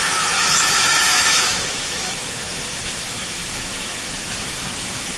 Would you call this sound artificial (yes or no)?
yes